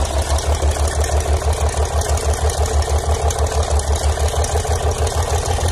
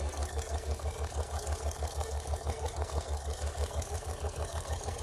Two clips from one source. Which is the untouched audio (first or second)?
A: first